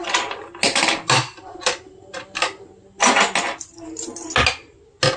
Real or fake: real